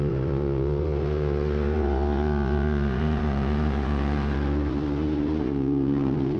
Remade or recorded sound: remade